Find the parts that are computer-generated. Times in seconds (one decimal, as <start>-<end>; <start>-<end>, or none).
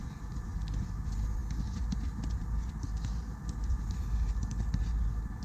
none